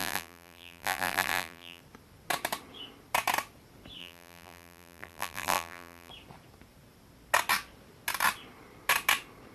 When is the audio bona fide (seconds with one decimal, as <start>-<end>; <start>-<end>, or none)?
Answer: 1.8-4.0; 6.1-9.5

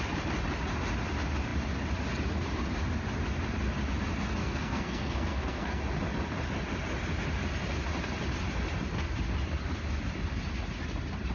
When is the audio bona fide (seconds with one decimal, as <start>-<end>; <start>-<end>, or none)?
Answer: 0.0-4.4; 5.8-11.3

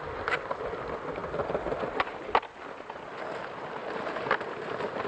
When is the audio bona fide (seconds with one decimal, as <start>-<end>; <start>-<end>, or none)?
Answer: 0.0-5.1